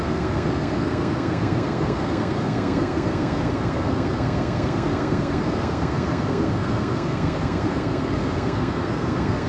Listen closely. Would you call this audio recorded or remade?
remade